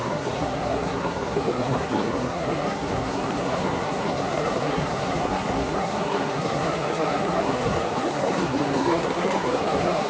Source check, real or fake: fake